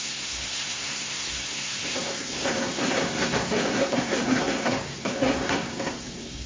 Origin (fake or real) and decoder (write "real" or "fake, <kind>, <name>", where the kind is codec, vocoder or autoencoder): fake, codec, SNAC